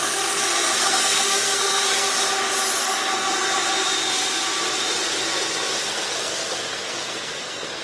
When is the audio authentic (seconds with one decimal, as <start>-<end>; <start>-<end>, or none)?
2.1-2.8; 3.4-5.8